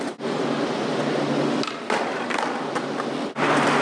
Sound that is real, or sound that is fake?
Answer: fake